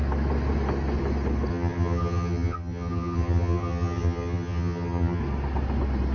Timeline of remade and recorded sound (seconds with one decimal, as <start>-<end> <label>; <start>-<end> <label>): 0.0-1.5 recorded; 1.5-5.2 remade; 5.2-6.1 recorded